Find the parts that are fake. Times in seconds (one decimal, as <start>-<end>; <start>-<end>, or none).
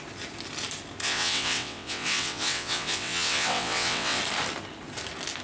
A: 1.0-4.2